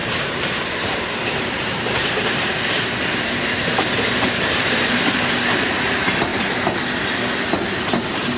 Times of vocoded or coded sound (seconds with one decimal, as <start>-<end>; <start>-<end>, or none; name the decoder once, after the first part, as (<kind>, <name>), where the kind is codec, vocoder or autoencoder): 0.0-4.9 (vocoder, BigVGAN v2)